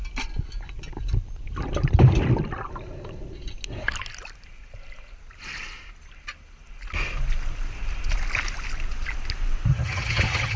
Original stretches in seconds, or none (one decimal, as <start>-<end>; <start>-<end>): 0.0-9.7